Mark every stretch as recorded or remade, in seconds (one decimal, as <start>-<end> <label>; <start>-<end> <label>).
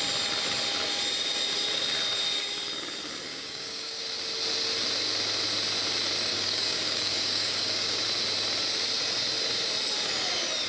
0.0-3.3 recorded; 3.3-4.0 remade; 4.0-6.3 recorded; 6.3-8.0 remade; 8.0-10.7 recorded